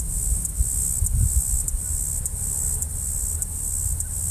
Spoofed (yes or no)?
no